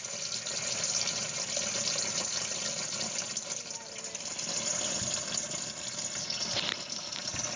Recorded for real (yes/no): yes